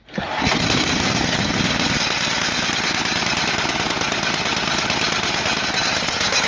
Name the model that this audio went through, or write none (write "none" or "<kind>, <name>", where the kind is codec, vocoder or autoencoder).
none